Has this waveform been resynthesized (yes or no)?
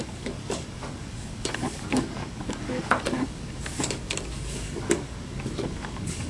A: yes